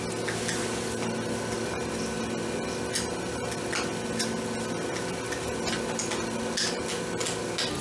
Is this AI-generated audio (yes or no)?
no